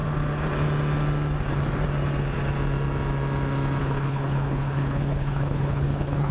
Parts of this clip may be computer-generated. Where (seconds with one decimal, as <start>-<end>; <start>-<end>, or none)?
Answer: 3.8-6.3